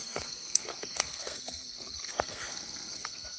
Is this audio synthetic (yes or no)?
yes